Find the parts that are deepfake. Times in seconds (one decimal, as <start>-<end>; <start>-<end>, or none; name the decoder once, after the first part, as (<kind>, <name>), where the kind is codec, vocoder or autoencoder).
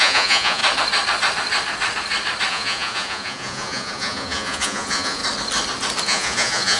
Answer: 0.0-0.6 (vocoder, Vocos); 2.5-5.2; 6.0-6.8